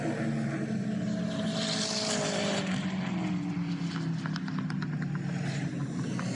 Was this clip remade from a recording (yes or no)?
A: no